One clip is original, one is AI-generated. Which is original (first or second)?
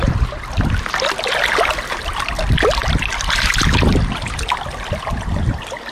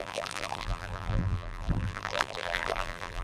first